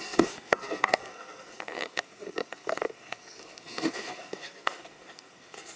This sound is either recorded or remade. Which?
remade